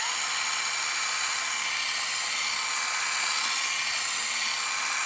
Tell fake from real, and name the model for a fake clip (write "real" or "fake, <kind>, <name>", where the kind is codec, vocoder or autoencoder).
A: real